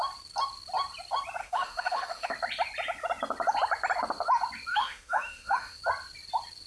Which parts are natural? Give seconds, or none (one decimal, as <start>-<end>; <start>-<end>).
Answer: 0.0-1.4; 2.3-4.7; 5.8-6.7